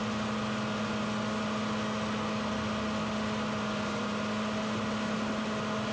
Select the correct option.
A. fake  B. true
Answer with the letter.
B